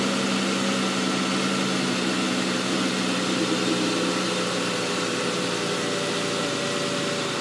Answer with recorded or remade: recorded